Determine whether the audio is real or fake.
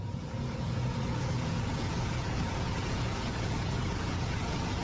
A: fake